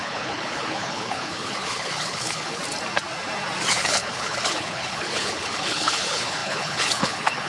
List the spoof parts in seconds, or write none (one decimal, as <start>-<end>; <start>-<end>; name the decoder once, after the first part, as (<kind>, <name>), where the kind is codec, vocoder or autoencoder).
0.0-2.6 (codec, HILCodec); 3.7-7.5